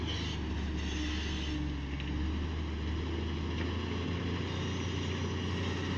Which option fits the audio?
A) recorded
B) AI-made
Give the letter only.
A